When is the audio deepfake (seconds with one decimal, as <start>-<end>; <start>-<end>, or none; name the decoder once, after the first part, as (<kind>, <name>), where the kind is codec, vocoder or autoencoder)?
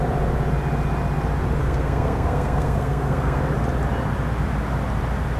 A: 1.6-3.4 (codec, SNAC)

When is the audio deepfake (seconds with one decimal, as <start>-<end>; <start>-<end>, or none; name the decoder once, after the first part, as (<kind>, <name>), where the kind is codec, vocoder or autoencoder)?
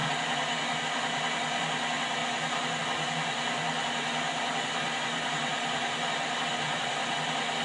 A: none